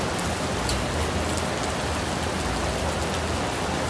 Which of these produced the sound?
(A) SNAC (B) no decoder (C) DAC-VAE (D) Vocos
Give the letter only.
B